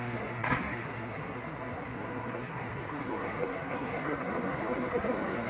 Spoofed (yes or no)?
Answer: yes